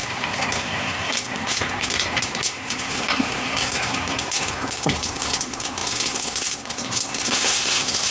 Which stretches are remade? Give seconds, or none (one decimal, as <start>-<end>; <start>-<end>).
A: 0.0-8.1